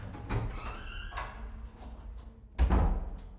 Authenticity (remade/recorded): recorded